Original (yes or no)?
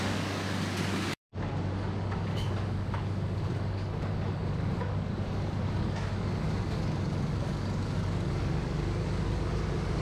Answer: no